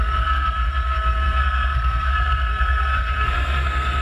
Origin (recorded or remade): remade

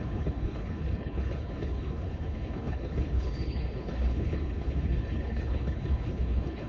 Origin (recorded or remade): remade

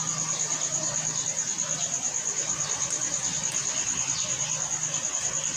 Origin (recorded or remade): recorded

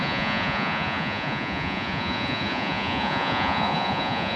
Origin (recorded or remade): remade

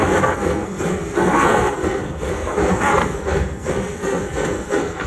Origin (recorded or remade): remade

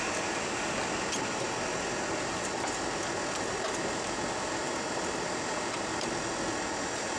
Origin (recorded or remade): recorded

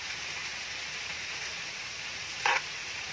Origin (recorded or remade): remade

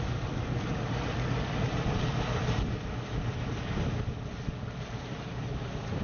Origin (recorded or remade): recorded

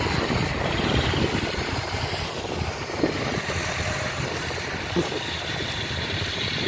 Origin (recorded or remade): recorded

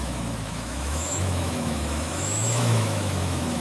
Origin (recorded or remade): remade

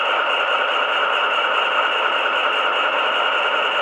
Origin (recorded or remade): recorded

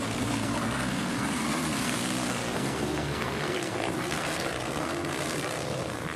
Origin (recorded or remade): remade